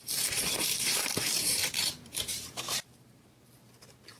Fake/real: fake